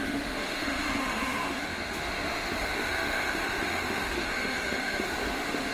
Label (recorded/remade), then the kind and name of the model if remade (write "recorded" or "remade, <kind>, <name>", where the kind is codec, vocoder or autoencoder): remade, autoencoder, DAC-VAE